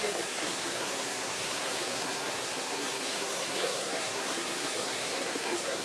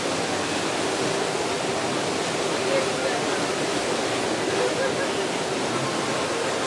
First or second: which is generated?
first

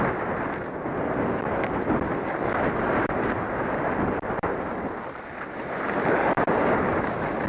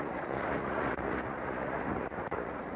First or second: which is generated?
second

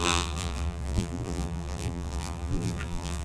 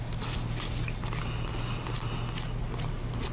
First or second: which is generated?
first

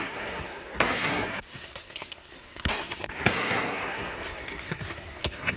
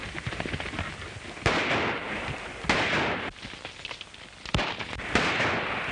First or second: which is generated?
first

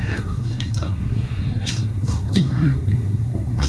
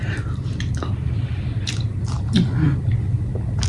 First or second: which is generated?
first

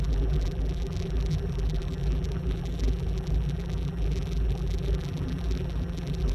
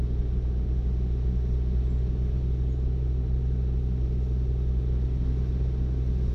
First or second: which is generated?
first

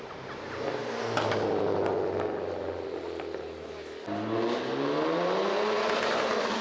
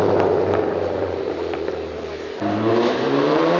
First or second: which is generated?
second